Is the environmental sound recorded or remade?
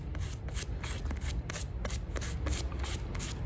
recorded